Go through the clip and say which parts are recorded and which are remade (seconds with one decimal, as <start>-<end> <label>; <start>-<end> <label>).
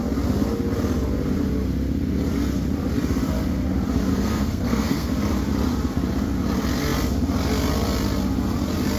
0.0-4.1 recorded; 4.1-5.1 remade; 5.1-9.0 recorded